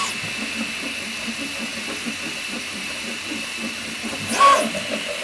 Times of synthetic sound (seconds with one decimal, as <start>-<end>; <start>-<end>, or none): 1.7-4.8